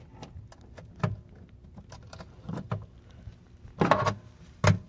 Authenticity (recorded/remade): recorded